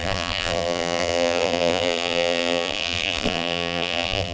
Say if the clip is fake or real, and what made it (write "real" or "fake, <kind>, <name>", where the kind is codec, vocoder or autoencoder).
fake, vocoder, BigVGAN v2